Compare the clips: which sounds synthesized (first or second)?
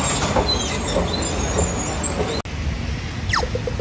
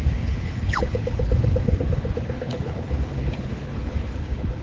second